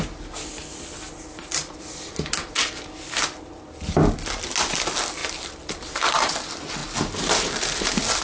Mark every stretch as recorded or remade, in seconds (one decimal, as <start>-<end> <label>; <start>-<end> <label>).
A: 0.0-8.2 recorded